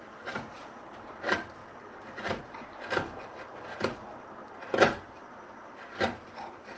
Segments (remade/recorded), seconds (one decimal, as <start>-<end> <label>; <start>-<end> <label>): 0.0-1.6 remade; 1.6-2.4 recorded; 2.4-6.8 remade